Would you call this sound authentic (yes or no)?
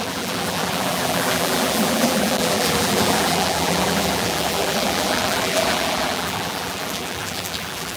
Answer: no